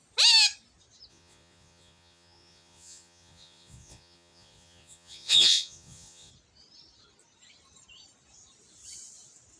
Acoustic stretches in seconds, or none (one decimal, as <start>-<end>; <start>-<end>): 0.0-1.1; 6.3-9.6